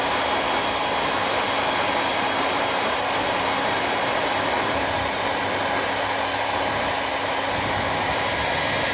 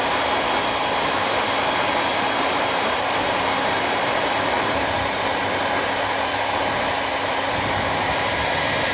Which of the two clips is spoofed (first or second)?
second